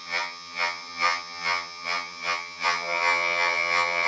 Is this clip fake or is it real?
fake